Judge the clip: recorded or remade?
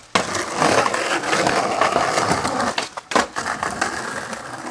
recorded